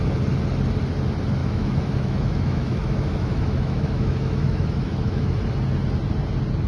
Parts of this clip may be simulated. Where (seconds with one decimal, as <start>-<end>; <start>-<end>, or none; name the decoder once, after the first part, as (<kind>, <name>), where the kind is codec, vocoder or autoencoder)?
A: 1.4-5.4 (autoencoder, DAC-VAE)